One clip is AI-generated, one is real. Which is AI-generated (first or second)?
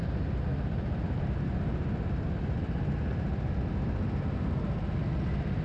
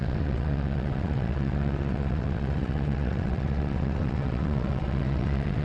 second